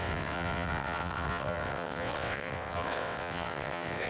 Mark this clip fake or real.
fake